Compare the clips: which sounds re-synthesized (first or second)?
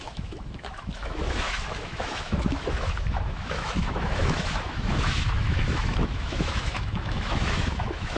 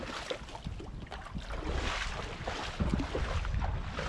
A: first